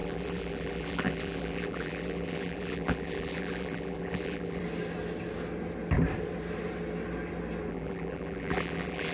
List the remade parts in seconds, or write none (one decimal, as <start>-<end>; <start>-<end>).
0.0-4.6; 7.7-9.1